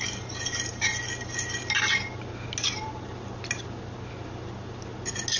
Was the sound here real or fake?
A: real